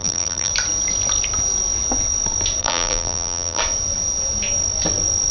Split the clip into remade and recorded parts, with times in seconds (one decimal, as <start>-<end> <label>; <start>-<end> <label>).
0.0-0.5 remade; 0.5-2.6 recorded; 2.6-3.6 remade; 3.6-5.3 recorded

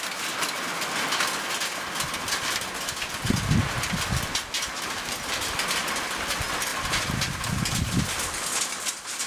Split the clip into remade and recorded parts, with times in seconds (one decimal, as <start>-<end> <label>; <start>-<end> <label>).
0.0-9.3 recorded